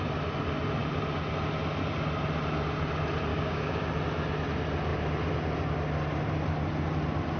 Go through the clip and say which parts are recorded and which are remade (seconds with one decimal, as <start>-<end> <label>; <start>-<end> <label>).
0.0-3.3 recorded; 3.3-3.9 remade; 3.9-7.4 recorded